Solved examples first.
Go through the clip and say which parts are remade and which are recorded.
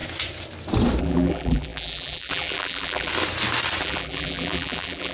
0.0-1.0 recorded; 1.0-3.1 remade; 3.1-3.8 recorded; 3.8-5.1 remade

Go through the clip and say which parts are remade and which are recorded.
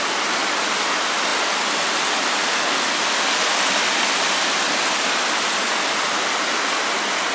0.0-7.3 recorded